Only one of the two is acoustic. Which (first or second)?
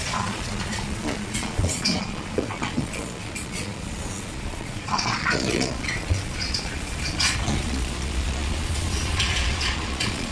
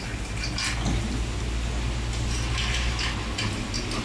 second